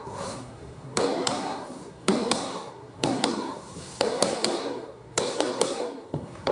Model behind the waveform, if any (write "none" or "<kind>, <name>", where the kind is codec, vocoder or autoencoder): codec, SNAC